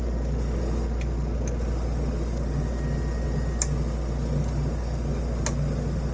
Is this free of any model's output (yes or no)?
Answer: yes